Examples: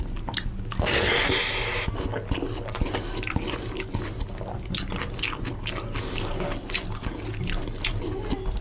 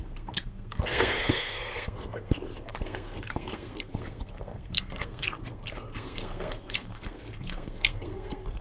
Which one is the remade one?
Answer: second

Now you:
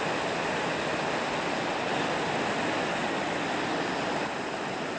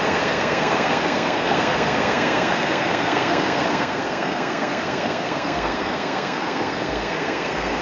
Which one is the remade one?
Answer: second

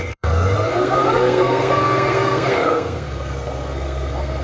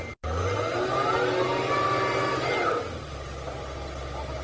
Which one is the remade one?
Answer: first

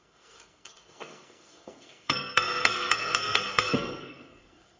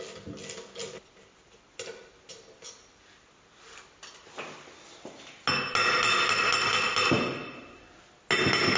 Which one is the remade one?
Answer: first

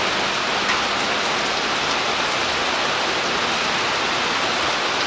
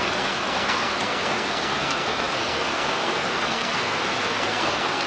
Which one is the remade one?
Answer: second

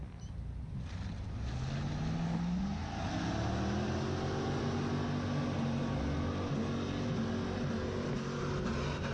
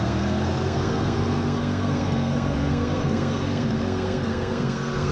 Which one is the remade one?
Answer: second